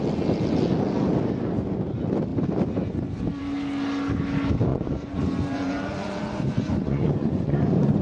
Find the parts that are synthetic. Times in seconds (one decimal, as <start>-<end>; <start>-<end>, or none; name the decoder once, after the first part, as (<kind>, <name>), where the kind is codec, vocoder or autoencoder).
4.7-8.0 (vocoder, Vocos)